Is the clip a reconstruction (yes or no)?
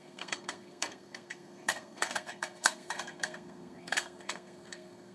yes